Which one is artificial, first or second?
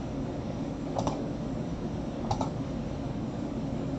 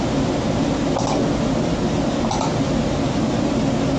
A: first